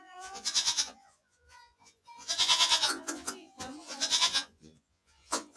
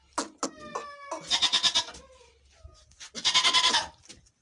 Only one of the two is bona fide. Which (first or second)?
second